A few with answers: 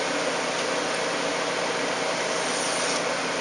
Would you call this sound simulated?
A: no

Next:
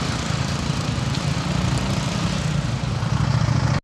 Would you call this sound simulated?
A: no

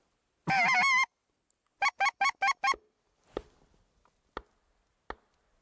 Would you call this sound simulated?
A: no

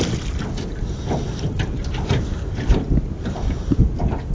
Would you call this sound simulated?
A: no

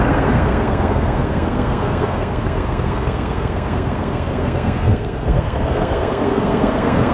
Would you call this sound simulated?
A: yes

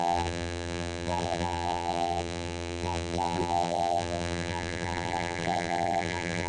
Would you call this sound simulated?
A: yes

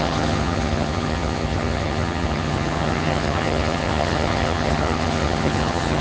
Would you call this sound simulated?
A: yes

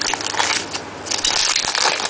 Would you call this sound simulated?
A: no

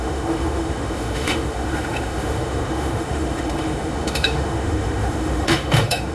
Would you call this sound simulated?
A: yes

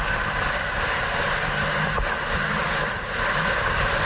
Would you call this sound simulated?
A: no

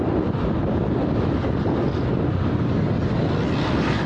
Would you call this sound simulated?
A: no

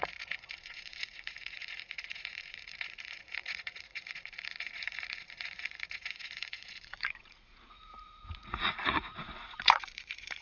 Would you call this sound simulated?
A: yes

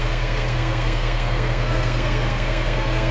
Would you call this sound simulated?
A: yes